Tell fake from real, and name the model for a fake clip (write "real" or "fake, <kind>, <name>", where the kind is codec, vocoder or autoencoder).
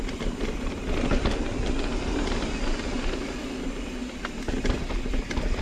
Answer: real